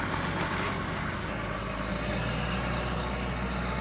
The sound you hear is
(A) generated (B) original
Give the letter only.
B